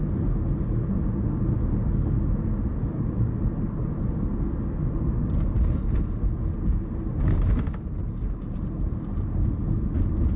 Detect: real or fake real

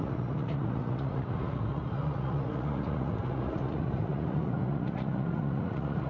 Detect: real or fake fake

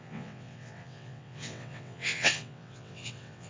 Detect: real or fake fake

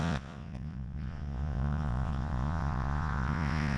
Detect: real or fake fake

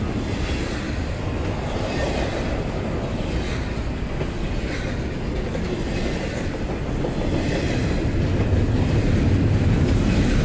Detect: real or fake real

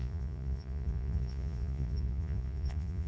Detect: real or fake fake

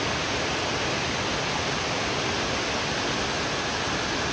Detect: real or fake real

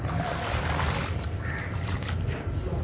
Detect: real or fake fake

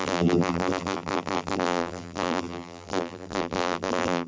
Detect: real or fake fake